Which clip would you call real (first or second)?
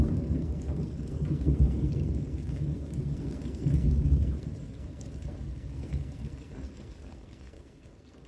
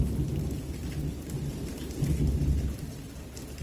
second